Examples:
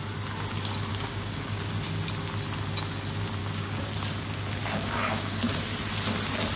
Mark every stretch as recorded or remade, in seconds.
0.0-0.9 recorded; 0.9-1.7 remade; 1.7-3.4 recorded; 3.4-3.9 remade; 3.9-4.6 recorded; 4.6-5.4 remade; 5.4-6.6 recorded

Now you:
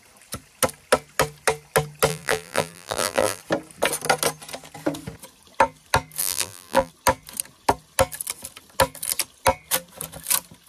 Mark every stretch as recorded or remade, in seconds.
0.0-2.1 recorded; 2.1-3.4 remade; 3.4-6.2 recorded; 6.2-6.9 remade; 6.9-10.7 recorded

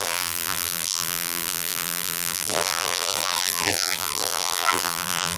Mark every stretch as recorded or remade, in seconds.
0.0-5.4 remade

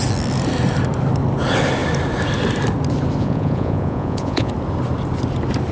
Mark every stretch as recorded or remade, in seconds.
0.0-3.2 recorded; 3.2-4.5 remade; 4.5-5.7 recorded

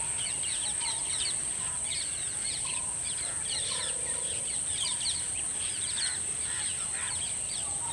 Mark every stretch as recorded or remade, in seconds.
0.0-4.0 recorded; 4.0-4.8 remade; 4.8-7.9 recorded